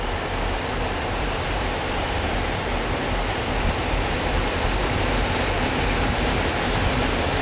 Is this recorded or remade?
remade